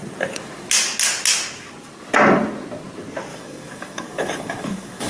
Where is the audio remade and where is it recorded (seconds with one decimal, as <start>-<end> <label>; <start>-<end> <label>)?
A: 0.0-3.3 recorded; 3.3-5.1 remade